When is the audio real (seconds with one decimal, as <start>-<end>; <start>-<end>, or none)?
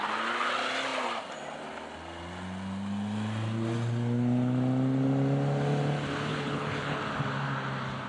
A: 0.0-6.3; 7.0-8.1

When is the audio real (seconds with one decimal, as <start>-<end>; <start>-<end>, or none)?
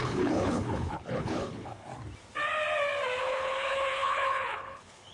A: 1.9-3.2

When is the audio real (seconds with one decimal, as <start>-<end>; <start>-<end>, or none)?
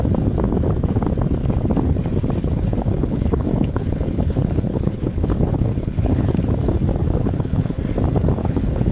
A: 0.0-2.4; 6.4-7.0; 7.8-8.4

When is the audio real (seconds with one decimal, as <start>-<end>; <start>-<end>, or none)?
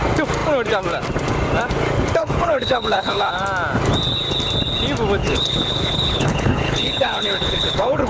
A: 0.0-2.2; 3.3-5.2